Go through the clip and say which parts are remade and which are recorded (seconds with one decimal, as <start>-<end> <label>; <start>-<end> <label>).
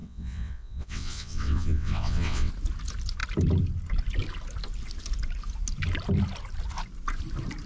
0.0-2.5 remade; 2.5-7.7 recorded